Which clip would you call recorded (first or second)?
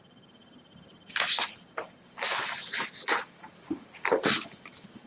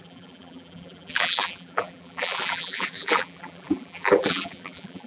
first